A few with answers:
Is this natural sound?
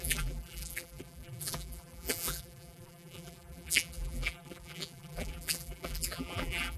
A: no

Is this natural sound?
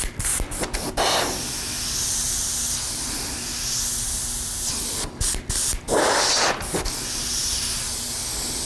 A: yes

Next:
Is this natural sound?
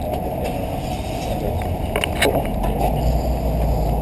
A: yes